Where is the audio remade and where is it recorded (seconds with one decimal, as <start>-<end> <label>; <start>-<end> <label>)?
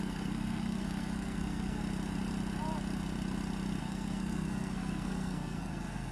0.0-1.8 remade; 1.8-3.8 recorded; 3.8-6.1 remade